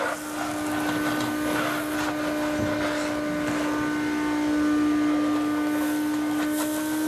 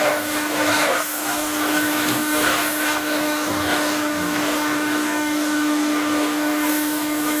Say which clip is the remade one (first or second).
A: second